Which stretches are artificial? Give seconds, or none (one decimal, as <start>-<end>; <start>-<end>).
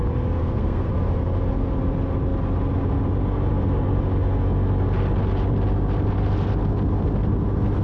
0.4-0.9